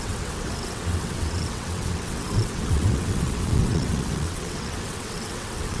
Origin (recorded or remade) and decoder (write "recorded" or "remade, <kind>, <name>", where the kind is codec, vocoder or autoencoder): remade, vocoder, WaveNeXt